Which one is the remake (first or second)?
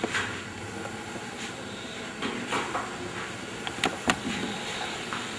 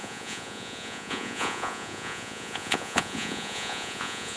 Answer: second